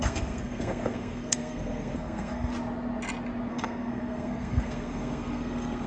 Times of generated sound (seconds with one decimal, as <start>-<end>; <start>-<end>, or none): 0.0-2.5; 3.5-5.9